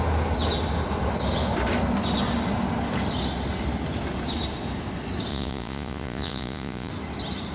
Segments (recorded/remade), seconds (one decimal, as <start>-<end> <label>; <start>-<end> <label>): 0.0-5.3 recorded; 5.3-6.9 remade; 6.9-7.5 recorded